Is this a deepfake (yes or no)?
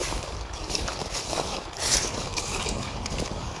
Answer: yes